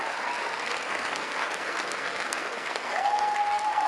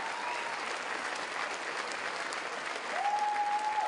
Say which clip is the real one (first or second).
second